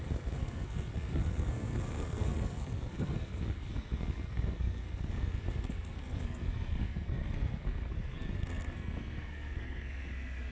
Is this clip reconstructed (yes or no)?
yes